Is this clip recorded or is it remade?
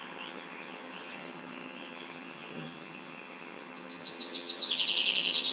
remade